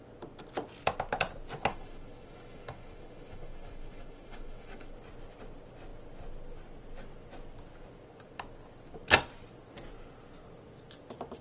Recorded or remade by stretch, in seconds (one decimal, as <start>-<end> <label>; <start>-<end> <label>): 0.0-1.7 recorded; 1.7-4.9 remade; 4.9-11.4 recorded